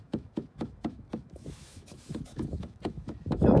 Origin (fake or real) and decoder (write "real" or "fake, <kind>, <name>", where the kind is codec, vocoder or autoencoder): fake, autoencoder, DAC-VAE